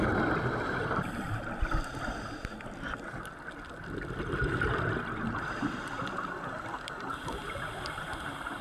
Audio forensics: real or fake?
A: fake